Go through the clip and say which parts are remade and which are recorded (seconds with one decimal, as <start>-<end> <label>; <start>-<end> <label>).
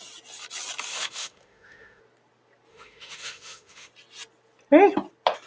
0.0-0.9 recorded; 0.9-2.0 remade; 2.0-2.7 recorded; 2.7-3.9 remade; 3.9-5.5 recorded